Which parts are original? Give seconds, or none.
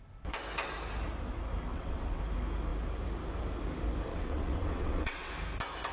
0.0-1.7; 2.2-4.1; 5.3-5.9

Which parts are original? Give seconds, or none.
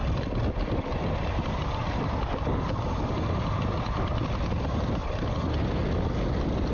0.0-6.7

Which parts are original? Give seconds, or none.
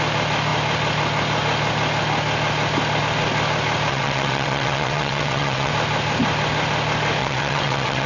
0.0-3.9; 5.7-7.2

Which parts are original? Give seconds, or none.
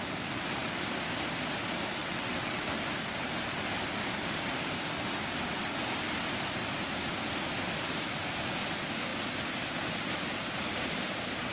0.0-2.0; 2.7-11.5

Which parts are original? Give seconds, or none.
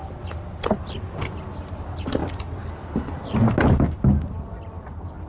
0.0-5.3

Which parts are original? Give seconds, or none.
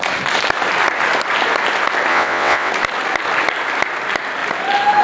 0.0-2.1; 2.7-5.0